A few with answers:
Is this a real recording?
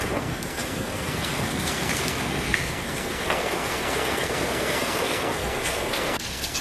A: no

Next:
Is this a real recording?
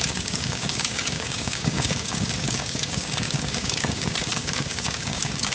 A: no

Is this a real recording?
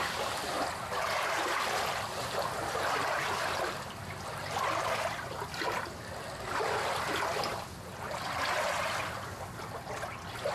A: yes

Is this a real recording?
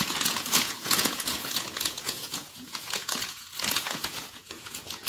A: no